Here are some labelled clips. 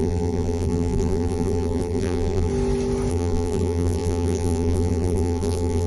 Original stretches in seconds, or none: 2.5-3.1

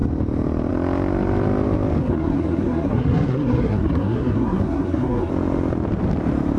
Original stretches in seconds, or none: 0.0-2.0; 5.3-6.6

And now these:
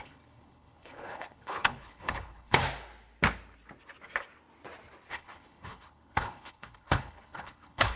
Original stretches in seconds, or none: 2.6-5.1

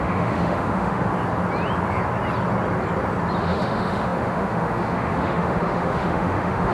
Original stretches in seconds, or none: 1.1-3.4

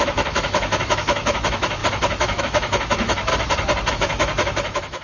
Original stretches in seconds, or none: 3.3-3.9

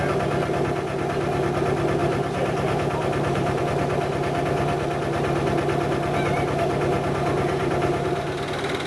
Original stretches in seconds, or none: 0.0-2.0; 3.6-8.9